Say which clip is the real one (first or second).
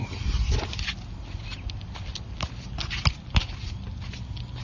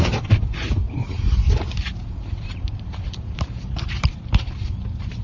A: first